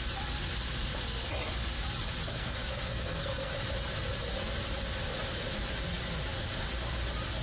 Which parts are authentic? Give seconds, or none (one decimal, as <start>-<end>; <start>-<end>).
0.0-2.3; 3.5-7.4